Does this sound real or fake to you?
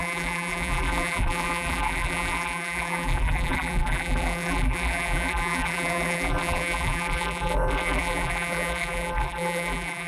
fake